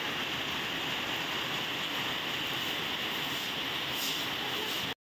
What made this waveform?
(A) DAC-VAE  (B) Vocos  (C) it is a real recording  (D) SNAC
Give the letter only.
C